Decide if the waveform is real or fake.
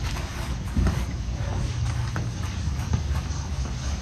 fake